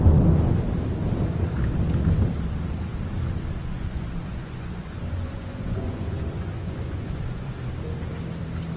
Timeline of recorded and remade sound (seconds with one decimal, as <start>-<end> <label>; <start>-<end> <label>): 0.0-3.6 recorded; 3.6-7.5 remade; 7.5-8.8 recorded